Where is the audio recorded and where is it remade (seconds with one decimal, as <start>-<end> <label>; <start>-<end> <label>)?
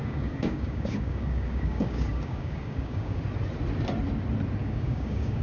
0.0-3.2 remade; 3.2-4.6 recorded; 4.6-5.4 remade